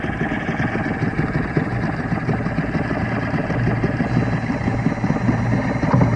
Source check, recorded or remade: recorded